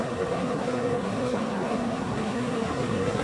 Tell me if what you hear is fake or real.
fake